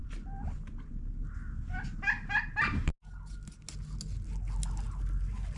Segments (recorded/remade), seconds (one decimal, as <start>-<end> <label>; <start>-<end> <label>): 0.0-0.9 remade; 0.9-5.6 recorded